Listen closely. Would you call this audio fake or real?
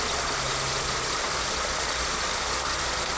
fake